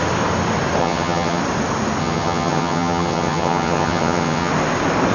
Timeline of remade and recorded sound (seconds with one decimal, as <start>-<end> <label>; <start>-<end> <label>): 0.0-0.8 recorded; 0.8-1.4 remade; 1.4-2.0 recorded; 2.0-4.5 remade; 4.5-5.1 recorded